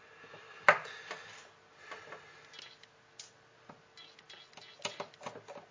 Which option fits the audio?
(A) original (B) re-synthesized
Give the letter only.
A